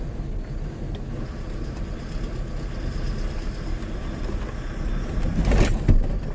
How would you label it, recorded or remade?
recorded